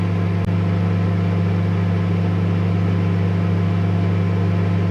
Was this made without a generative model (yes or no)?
yes